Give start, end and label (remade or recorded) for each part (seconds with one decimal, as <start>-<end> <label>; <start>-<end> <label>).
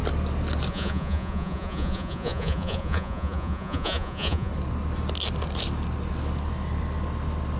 0.0-0.7 recorded; 0.7-4.5 remade; 4.5-7.6 recorded